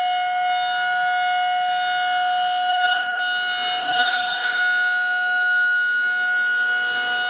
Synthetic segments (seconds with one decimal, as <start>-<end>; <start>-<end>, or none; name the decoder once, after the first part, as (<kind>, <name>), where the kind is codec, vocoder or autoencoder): 2.7-3.2 (codec, HILCodec); 3.8-4.6